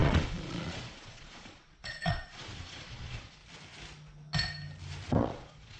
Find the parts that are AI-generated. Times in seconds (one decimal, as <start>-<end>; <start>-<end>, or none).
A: 0.0-3.4; 5.1-5.8